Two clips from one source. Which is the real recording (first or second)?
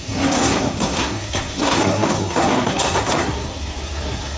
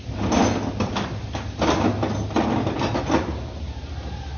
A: second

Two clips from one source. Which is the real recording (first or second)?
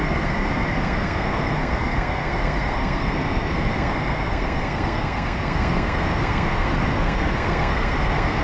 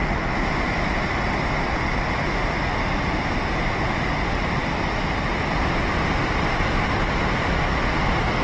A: second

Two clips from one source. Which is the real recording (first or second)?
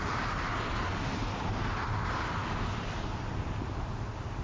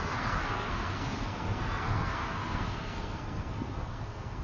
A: first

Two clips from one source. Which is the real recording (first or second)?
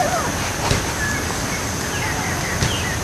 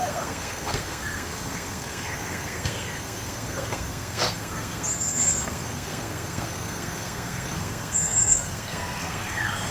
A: first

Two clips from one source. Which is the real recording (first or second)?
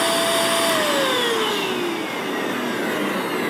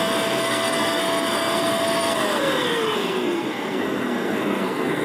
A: first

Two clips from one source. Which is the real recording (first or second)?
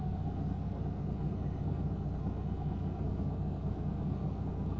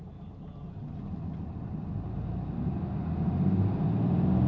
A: second